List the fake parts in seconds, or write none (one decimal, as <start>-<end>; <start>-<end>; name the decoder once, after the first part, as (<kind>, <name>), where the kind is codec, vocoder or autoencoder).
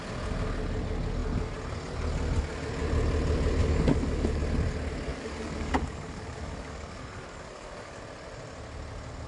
3.6-4.4 (codec, DAC); 5.1-8.0